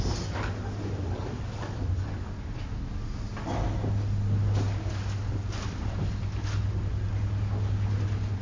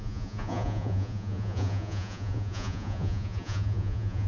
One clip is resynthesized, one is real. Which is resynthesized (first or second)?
second